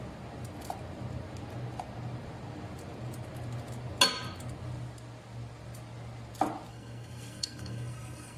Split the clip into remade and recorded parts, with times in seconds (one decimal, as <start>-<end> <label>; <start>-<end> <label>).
0.0-6.7 recorded; 6.7-8.4 remade